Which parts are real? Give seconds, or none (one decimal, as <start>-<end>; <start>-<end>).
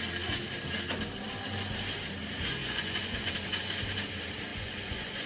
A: 0.0-2.6; 3.3-4.5